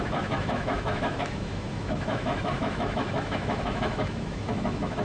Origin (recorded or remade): remade